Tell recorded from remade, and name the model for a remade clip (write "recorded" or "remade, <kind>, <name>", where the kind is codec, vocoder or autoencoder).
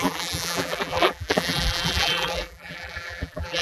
remade, vocoder, BigVGAN v2